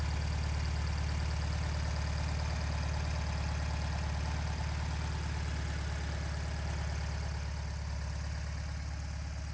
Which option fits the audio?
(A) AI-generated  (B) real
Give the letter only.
B